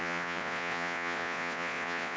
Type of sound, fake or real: fake